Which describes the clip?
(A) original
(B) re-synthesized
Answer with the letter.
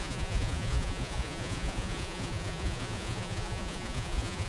B